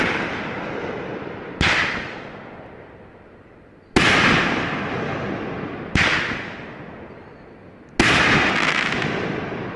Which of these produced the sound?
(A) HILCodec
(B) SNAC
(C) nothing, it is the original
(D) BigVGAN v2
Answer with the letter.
C